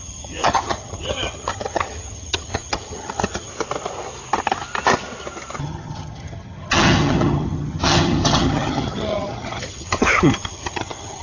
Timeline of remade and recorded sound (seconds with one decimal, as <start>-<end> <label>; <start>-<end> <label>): 0.0-3.5 remade; 3.5-5.6 recorded; 5.6-11.2 remade